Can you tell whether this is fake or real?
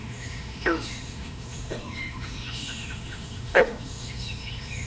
fake